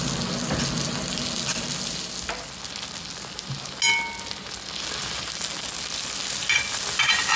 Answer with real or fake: real